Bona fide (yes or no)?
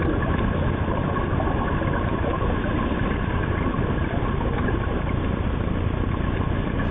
yes